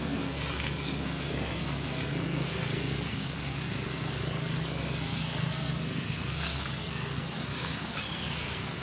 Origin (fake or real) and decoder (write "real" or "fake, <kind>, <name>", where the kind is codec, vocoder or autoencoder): fake, codec, SNAC